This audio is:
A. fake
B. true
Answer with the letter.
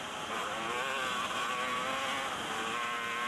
B